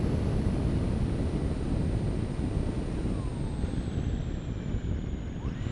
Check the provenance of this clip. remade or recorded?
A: recorded